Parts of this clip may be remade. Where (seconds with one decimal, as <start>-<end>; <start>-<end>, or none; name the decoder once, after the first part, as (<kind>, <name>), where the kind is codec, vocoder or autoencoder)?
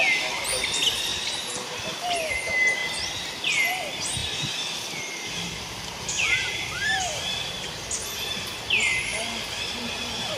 1.1-2.3 (vocoder, BigVGAN v2); 4.2-8.6; 9.1-9.6